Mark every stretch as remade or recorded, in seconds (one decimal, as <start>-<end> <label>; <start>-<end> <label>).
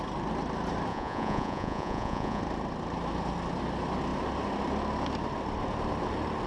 0.0-0.9 recorded; 0.9-2.4 remade; 2.4-6.5 recorded